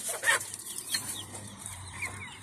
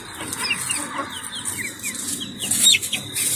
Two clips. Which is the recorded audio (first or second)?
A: second